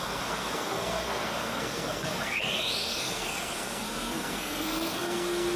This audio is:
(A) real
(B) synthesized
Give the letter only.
B